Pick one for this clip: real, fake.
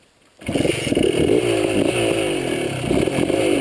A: real